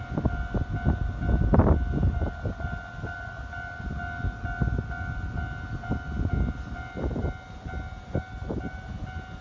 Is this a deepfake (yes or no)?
no